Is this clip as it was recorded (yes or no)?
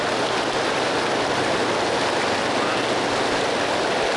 yes